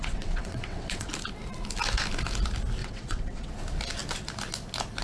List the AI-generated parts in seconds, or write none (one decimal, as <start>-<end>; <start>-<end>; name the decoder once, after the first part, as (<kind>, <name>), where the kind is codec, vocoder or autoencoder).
0.0-1.1 (vocoder, WaveNeXt); 2.8-3.5